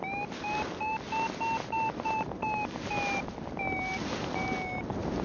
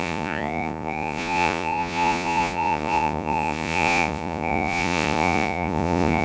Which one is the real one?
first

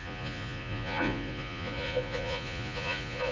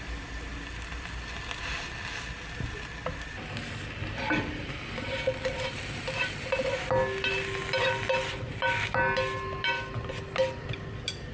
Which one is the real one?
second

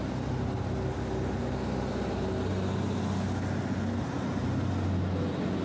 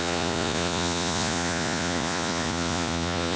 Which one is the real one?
first